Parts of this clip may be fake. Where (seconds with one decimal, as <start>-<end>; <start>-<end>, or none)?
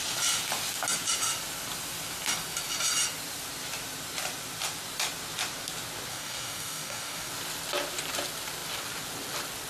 6.1-7.3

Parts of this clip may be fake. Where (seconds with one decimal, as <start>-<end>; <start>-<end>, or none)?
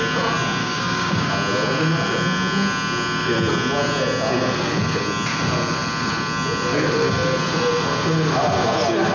0.6-1.3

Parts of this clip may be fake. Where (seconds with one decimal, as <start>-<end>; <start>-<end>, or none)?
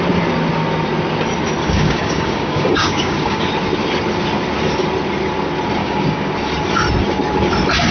1.6-3.5; 5.8-6.3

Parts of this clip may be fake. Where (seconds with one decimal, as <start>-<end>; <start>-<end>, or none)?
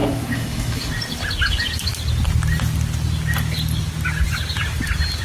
0.0-0.9